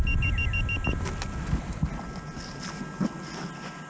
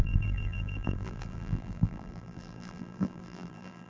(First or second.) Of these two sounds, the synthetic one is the second